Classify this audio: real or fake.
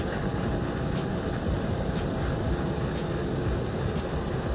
real